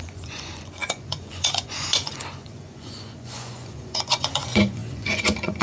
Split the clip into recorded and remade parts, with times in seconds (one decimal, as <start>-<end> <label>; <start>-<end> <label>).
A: 0.0-5.6 remade